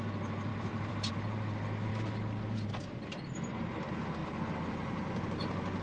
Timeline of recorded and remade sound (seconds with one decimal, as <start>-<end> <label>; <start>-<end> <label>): 0.0-0.5 recorded; 0.5-1.1 remade; 1.1-1.9 recorded; 1.9-3.1 remade; 3.1-5.8 recorded